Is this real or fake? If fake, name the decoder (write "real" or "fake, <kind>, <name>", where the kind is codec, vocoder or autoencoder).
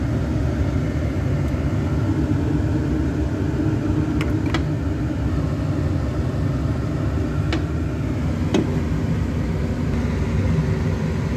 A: real